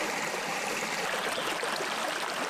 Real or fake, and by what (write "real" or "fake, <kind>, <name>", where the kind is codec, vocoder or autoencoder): real